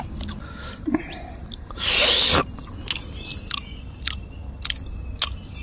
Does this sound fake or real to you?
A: real